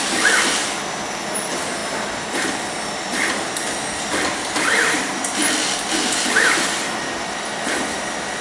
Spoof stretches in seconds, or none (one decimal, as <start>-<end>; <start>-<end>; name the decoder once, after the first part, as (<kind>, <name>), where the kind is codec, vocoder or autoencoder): 0.0-0.6 (vocoder, BigVGAN v2); 1.1-5.4; 6.3-8.4